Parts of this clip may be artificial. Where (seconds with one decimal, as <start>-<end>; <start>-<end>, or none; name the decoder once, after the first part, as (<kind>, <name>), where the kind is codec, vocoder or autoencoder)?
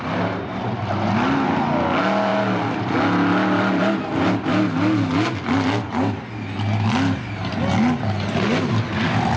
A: none